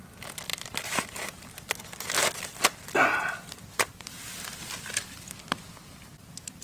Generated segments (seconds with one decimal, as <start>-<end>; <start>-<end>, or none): 0.5-4.5; 6.1-6.6